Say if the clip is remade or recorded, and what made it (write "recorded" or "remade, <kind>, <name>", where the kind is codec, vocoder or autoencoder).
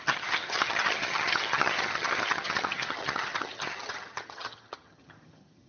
remade, vocoder, HiFi-GAN